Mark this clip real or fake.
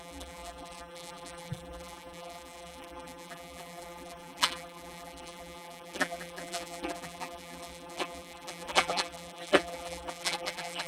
fake